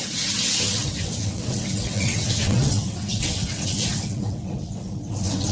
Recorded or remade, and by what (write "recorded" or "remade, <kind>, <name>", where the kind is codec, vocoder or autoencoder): remade, vocoder, WaveNeXt